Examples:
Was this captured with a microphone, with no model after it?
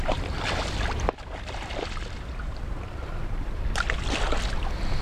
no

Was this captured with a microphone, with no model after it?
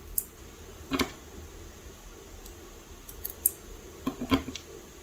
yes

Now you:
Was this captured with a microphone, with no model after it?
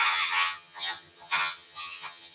no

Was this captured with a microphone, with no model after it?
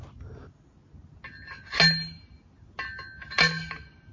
yes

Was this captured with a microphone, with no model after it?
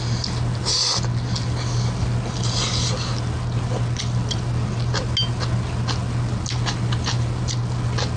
yes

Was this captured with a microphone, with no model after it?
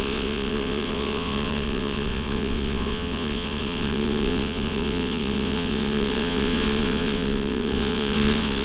no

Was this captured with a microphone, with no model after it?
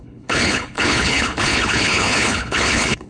no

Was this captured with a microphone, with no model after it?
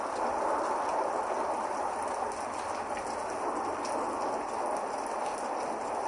yes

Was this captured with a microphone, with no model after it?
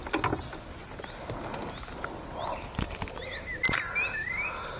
yes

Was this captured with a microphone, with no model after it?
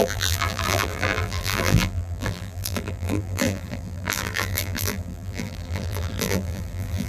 no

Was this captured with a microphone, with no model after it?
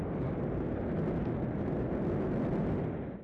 yes